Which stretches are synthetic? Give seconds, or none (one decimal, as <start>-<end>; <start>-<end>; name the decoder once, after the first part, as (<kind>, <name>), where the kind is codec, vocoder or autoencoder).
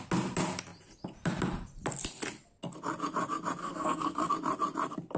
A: 3.6-4.3 (codec, SNAC)